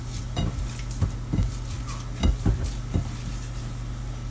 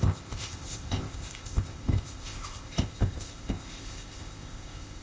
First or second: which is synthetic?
second